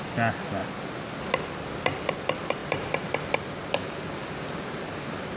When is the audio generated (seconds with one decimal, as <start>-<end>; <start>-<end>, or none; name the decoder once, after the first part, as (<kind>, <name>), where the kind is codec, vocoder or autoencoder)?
2.6-3.2 (vocoder, BigVGAN v2)

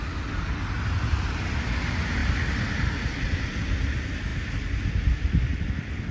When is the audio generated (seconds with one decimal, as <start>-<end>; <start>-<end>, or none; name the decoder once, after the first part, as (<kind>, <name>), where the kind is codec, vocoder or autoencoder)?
none

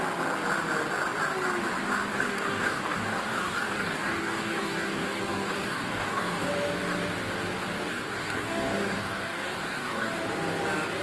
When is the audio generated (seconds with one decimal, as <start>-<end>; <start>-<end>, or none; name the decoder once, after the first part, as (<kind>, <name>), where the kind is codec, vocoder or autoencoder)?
2.1-6.5 (codec, DAC); 7.9-10.1

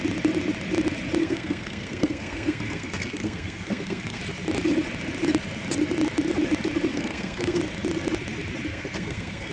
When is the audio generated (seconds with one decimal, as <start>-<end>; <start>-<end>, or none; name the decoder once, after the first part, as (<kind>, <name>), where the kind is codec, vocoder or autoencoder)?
1.2-4.2 (codec, SNAC); 6.9-7.6; 8.7-9.5

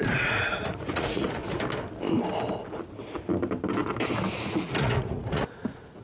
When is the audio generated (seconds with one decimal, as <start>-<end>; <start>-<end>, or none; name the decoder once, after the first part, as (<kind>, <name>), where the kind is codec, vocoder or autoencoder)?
0.0-1.4 (vocoder, Vocos); 4.3-6.0

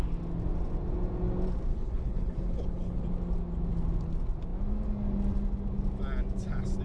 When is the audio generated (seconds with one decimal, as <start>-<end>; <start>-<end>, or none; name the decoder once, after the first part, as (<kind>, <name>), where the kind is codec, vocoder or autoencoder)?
1.7-3.0 (codec, HILCodec)

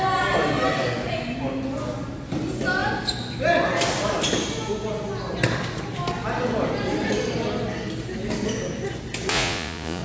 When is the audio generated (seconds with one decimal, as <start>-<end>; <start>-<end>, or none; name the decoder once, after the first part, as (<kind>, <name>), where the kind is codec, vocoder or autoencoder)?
9.3-10.0 (vocoder, Vocos)